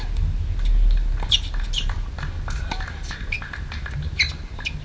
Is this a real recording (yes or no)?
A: yes